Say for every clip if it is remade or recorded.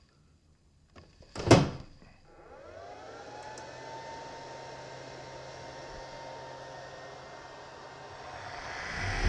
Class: recorded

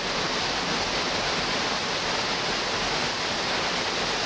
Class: remade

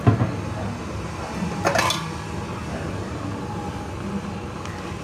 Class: recorded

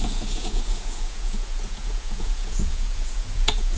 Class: remade